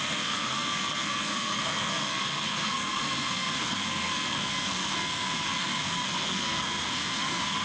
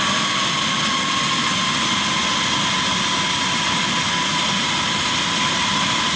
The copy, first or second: first